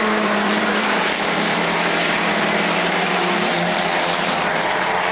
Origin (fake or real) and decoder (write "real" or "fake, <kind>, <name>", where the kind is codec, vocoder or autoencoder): fake, vocoder, BigVGAN v2